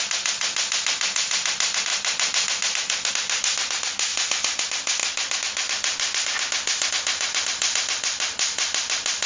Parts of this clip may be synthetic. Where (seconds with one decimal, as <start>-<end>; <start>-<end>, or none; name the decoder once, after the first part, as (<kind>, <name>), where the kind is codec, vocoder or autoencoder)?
4.1-4.6 (vocoder, Vocos)